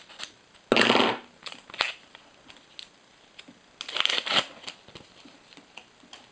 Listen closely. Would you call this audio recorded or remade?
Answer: recorded